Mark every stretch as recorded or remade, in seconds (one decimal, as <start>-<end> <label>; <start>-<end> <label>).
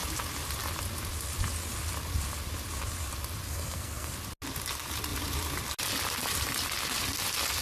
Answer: 0.0-3.5 recorded; 3.5-4.1 remade; 4.1-7.6 recorded